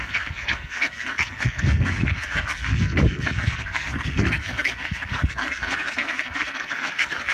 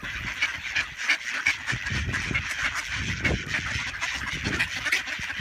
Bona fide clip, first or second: second